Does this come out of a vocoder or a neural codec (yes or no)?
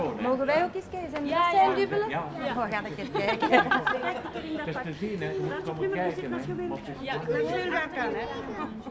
no